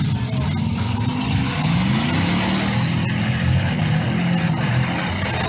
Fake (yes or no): no